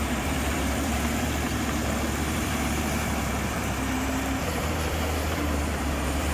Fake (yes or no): yes